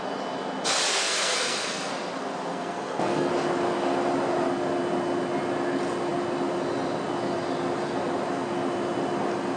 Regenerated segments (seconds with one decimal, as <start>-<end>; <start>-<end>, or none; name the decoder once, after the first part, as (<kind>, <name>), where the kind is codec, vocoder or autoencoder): 0.9-1.9 (codec, SNAC); 2.5-3.3